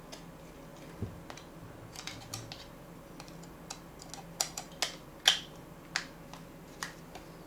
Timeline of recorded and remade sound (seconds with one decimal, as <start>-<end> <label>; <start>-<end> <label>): 0.0-7.5 recorded